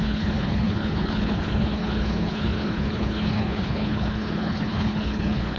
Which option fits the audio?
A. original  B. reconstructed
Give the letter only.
B